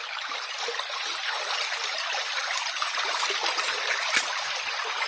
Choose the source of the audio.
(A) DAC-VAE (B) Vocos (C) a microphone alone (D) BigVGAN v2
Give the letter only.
D